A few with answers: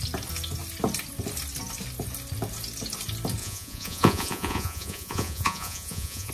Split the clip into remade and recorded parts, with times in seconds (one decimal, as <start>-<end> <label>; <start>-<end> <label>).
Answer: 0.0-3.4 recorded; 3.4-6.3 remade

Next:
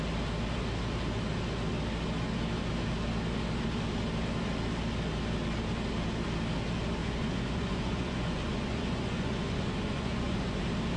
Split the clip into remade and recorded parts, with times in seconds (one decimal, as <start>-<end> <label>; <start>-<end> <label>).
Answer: 0.0-7.0 recorded; 7.0-10.6 remade; 10.6-11.0 recorded

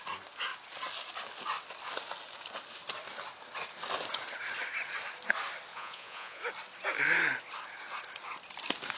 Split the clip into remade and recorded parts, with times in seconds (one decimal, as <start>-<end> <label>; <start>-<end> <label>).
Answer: 0.0-5.7 recorded; 5.7-6.4 remade; 6.4-9.0 recorded

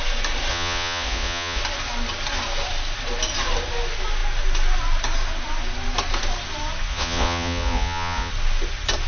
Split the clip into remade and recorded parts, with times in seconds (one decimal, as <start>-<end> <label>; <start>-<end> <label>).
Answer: 0.0-0.5 recorded; 0.5-1.6 remade; 1.6-6.9 recorded; 6.9-8.3 remade; 8.3-9.1 recorded

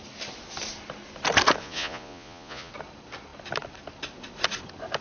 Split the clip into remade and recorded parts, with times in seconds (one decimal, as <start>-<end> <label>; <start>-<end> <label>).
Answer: 0.0-1.6 recorded; 1.6-2.7 remade; 2.7-5.0 recorded

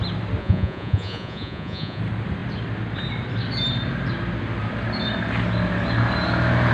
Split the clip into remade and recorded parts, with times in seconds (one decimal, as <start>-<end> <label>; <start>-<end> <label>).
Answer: 0.0-0.4 recorded; 0.4-2.0 remade; 2.0-6.7 recorded